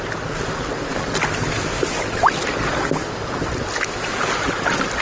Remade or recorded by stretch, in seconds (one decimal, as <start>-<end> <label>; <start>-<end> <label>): 0.0-5.0 recorded